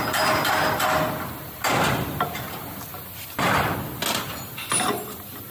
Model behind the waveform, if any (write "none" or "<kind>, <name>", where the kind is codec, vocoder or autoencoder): none